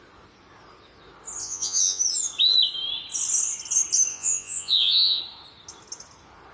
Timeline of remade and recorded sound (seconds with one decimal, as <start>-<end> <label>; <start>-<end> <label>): 0.0-1.4 recorded; 1.4-2.0 remade; 2.0-4.1 recorded; 4.1-5.2 remade; 5.2-6.5 recorded